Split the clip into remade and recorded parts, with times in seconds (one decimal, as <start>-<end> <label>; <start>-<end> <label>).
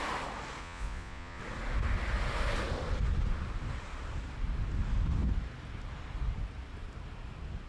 0.0-0.6 recorded; 0.6-1.4 remade; 1.4-7.7 recorded